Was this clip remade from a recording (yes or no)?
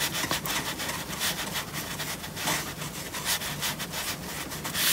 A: no